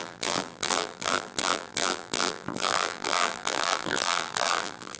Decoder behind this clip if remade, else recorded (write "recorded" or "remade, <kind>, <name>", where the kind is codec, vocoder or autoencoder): remade, vocoder, BigVGAN v2